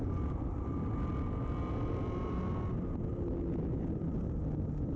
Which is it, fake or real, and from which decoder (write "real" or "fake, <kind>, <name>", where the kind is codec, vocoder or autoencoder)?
real